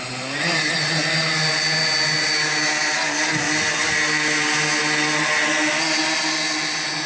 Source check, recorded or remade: recorded